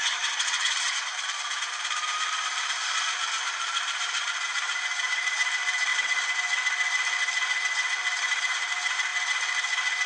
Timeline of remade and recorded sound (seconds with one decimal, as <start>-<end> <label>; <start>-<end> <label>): 0.0-5.9 remade; 5.9-8.2 recorded; 8.2-9.1 remade; 9.1-10.1 recorded